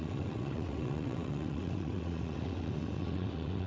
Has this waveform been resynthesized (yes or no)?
yes